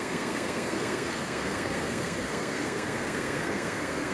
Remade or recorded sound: remade